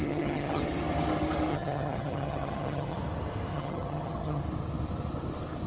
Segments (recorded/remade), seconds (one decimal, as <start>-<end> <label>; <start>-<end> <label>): 0.0-0.6 remade; 0.6-1.5 recorded; 1.5-3.0 remade; 3.0-3.5 recorded; 3.5-4.4 remade; 4.4-5.7 recorded